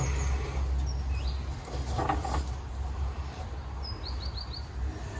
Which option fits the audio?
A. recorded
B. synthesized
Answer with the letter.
A